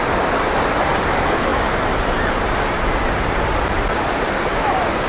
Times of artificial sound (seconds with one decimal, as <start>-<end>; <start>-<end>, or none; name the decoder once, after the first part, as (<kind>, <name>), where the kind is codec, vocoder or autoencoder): none